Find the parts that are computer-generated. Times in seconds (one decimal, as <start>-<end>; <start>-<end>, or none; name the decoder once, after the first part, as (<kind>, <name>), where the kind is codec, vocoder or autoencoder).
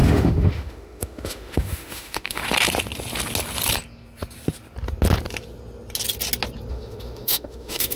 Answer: 0.0-2.4 (autoencoder, DAC-VAE); 6.7-8.0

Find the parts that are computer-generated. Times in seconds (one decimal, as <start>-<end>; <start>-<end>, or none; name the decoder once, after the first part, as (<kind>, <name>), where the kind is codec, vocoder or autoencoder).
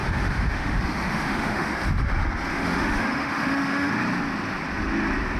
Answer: 0.0-1.7 (autoencoder, DAC-VAE); 2.5-3.9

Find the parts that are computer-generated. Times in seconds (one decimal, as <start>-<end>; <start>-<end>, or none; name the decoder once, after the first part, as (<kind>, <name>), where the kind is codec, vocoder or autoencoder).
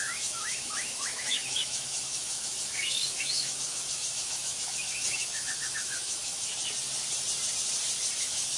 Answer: 0.0-6.5 (autoencoder, DAC-VAE); 8.2-8.6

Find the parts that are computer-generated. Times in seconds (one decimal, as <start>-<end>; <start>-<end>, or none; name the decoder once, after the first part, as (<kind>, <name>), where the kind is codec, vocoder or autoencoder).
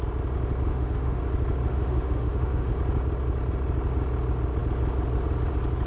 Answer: 0.7-1.2 (autoencoder, DAC-VAE); 1.7-2.7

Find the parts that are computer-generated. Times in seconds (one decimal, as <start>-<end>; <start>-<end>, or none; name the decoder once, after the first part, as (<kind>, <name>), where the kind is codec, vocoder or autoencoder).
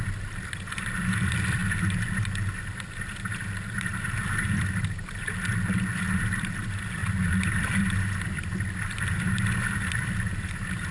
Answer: none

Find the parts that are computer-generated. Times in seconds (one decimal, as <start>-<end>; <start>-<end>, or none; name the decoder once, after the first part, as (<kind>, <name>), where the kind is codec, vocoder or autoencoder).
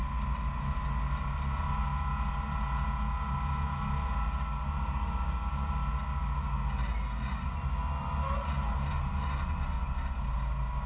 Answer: none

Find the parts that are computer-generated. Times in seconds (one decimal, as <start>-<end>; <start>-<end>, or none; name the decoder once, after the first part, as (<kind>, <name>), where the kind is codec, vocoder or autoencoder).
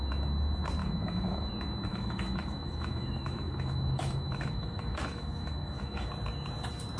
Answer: 0.8-1.5 (autoencoder, DAC-VAE); 1.9-6.1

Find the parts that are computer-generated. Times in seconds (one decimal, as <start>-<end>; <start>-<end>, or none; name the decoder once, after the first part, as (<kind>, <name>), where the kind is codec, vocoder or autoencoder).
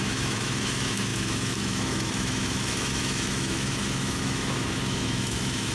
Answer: 0.0-5.7 (autoencoder, DAC-VAE)